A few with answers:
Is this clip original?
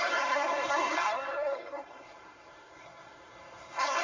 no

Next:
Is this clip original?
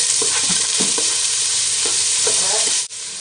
no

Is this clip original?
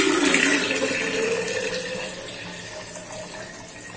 yes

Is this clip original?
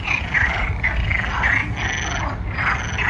yes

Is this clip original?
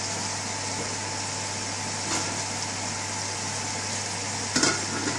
yes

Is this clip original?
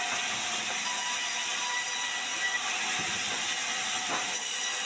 yes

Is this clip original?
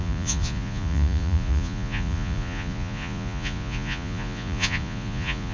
no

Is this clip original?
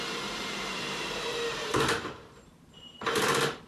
no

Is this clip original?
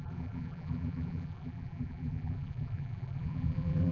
no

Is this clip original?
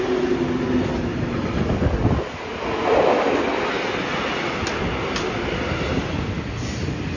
yes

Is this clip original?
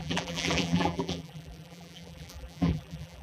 no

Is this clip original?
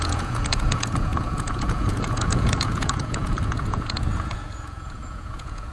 no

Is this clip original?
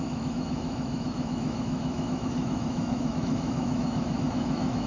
no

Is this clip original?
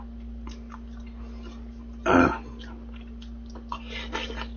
yes